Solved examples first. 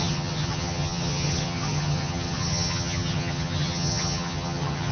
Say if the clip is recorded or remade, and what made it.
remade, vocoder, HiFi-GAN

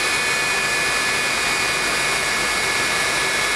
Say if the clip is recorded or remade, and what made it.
recorded